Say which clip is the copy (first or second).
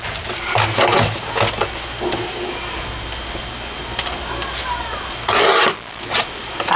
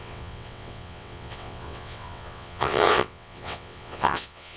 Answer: second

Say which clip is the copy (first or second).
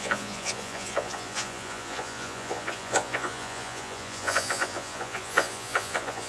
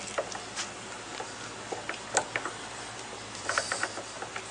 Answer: first